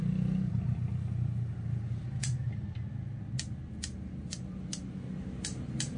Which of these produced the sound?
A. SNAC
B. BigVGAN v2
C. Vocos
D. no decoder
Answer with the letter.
D